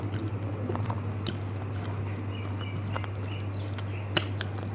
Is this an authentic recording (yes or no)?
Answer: yes